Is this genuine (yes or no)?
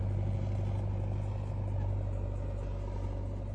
yes